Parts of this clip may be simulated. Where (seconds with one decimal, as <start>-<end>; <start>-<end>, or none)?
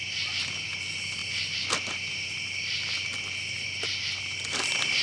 none